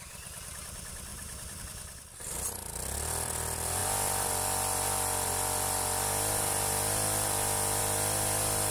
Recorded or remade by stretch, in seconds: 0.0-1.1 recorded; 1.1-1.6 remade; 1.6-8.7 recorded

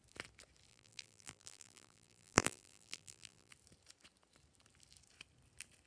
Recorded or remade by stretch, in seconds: 0.0-0.7 recorded; 0.7-3.5 remade; 3.5-5.9 recorded

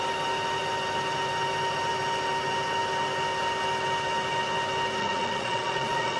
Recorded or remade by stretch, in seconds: 0.0-5.0 recorded; 5.0-6.2 remade

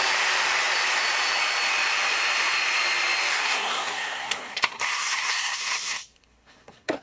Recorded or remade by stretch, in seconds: 0.0-3.3 recorded; 3.3-7.0 remade

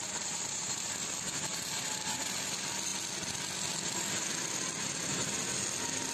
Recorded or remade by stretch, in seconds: 0.0-0.9 remade; 0.9-1.5 recorded; 1.5-2.2 remade; 2.2-6.1 recorded